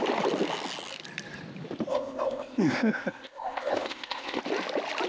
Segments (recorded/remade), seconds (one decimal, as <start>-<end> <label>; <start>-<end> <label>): 0.0-1.9 recorded; 1.9-4.4 remade; 4.4-5.1 recorded